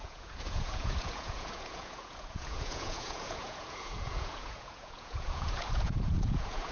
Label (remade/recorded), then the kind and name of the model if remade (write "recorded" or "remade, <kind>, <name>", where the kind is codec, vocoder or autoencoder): remade, vocoder, Vocos